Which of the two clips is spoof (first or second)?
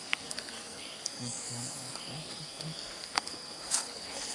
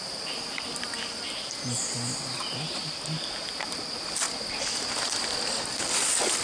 first